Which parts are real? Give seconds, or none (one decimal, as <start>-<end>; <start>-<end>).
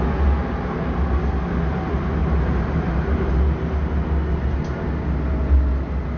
0.0-2.2; 3.3-6.2